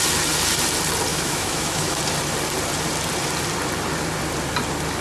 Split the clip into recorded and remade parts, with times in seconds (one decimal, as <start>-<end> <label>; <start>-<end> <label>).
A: 0.0-1.1 recorded; 1.1-2.0 remade; 2.0-5.0 recorded